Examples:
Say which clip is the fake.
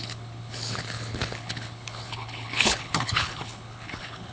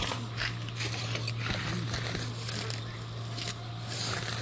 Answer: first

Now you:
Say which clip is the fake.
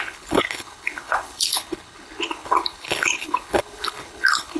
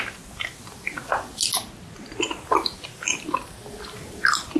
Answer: first